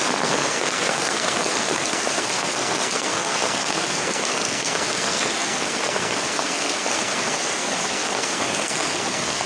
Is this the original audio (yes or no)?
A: no